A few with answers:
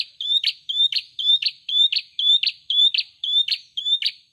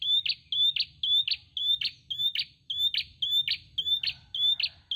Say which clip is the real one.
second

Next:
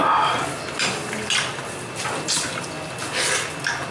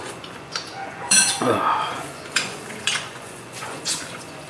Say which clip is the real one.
first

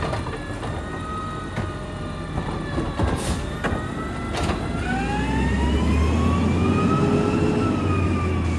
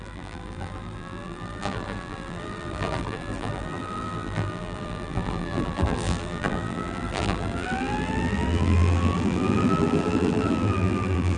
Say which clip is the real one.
first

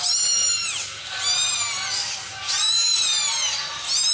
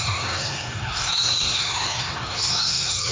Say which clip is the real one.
first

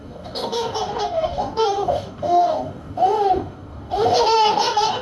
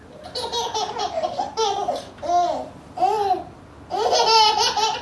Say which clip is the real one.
second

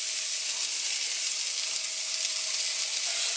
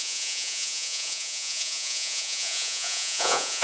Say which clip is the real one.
first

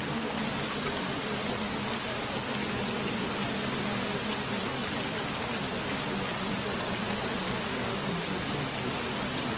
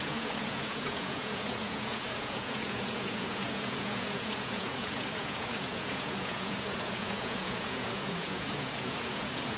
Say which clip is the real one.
first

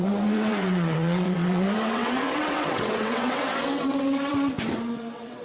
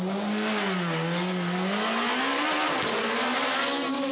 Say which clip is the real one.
second